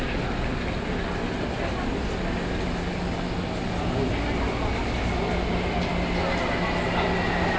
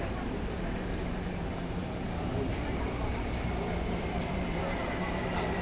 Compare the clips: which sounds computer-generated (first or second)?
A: second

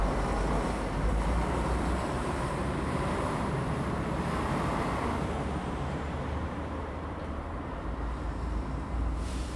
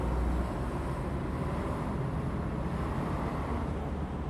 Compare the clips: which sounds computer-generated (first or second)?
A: first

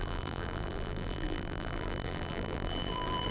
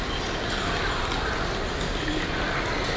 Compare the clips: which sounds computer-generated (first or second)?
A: first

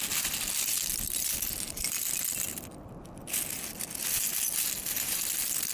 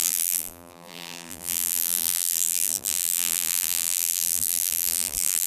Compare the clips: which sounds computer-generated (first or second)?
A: second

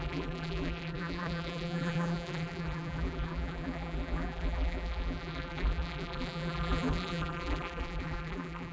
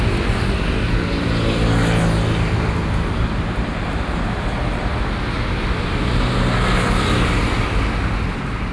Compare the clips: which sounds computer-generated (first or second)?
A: first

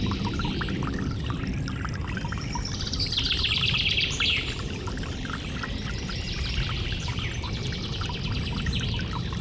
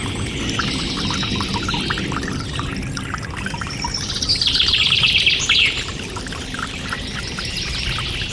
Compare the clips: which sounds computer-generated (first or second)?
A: first